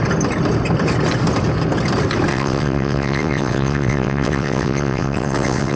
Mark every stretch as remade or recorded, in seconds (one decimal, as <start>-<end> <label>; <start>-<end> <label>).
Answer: 0.0-2.3 recorded; 2.3-5.8 remade